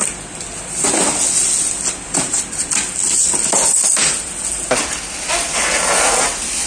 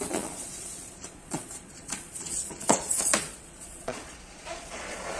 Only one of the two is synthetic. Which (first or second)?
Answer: second